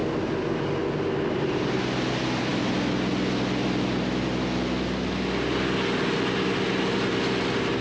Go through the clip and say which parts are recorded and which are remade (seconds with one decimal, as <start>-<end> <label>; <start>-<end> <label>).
0.0-7.8 recorded